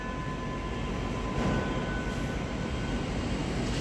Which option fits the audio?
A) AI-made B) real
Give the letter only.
B